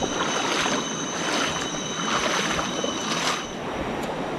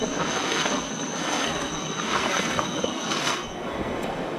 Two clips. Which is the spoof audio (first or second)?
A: second